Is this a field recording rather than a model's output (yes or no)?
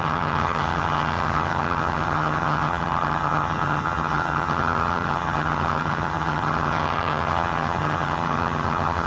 no